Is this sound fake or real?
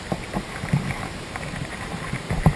fake